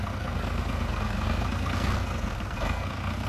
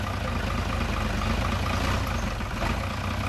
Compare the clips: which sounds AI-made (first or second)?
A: first